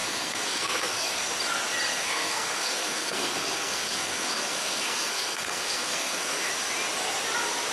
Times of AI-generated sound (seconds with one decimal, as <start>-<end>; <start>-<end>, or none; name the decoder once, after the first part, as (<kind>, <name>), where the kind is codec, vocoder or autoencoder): 0.0-1.3 (codec, SNAC); 1.9-6.5